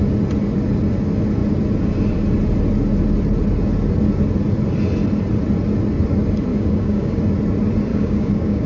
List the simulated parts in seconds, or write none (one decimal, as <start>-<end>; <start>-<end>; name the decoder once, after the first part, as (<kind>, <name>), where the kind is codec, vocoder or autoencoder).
6.5-7.2 (codec, DAC); 7.9-8.7